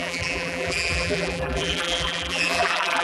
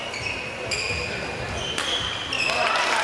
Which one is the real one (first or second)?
second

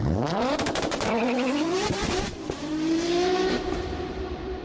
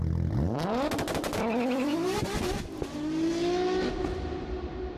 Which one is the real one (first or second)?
second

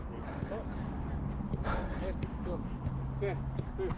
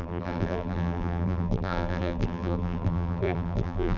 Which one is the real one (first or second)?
first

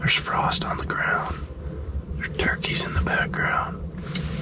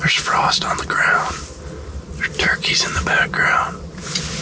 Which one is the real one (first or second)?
second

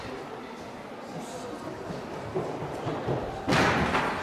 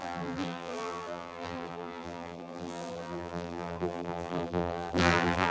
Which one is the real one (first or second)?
first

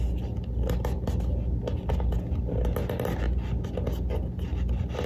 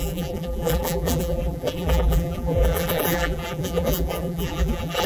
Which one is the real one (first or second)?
first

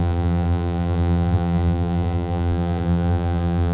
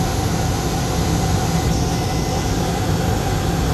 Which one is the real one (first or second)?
second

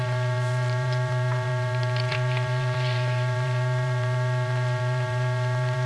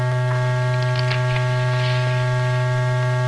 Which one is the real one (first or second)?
second